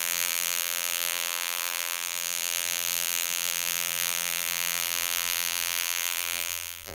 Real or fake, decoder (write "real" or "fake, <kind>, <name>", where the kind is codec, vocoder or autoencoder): fake, vocoder, BigVGAN v2